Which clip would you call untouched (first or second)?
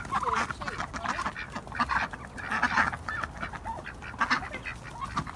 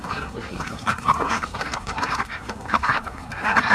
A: first